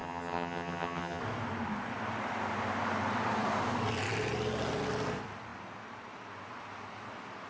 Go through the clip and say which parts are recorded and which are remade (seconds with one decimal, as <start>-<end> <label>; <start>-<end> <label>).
0.0-1.2 remade; 1.2-7.5 recorded

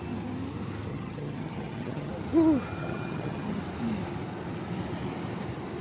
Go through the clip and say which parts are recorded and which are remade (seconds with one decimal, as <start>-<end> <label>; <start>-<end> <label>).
0.0-0.9 recorded; 0.9-2.1 remade; 2.1-2.8 recorded; 2.8-3.6 remade; 3.6-5.8 recorded

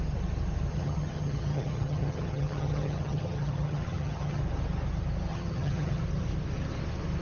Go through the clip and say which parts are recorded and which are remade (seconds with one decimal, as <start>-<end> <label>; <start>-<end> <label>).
0.0-0.7 recorded; 0.7-4.4 remade; 4.4-5.3 recorded; 5.3-6.0 remade; 6.0-7.2 recorded

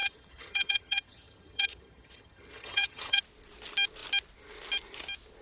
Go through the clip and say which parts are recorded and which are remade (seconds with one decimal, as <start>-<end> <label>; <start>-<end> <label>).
0.0-3.2 remade; 3.2-5.4 recorded